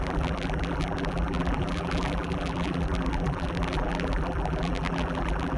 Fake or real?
fake